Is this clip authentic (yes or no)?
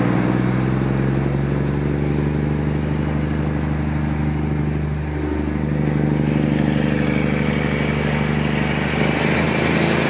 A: yes